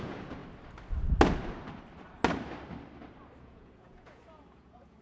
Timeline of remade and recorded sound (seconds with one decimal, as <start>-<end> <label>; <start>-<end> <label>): 0.0-0.4 remade; 0.4-3.4 recorded; 3.4-5.0 remade